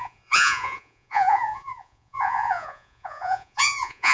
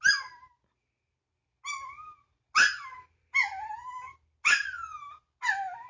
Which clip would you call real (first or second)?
second